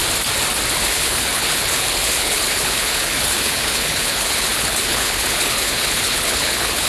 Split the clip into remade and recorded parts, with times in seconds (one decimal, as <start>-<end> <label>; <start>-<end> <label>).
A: 0.0-0.8 recorded; 0.8-6.9 remade